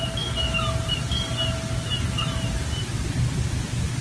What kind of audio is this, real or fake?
real